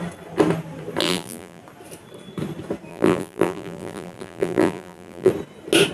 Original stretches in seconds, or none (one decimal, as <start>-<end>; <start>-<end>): 0.0-1.0; 1.6-2.9; 5.3-5.9